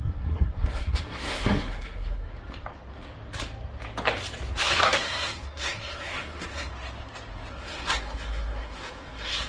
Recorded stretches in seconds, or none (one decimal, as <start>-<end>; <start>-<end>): 2.3-4.6; 6.7-7.5